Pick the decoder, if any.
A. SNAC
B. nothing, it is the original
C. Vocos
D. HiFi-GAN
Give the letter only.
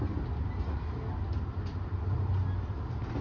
B